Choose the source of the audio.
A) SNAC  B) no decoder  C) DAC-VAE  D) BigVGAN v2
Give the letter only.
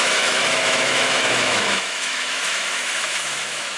C